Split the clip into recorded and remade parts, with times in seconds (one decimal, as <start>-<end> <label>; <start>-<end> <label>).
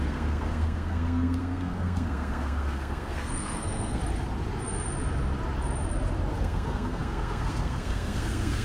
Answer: 0.0-4.0 remade; 4.0-6.3 recorded; 6.3-8.6 remade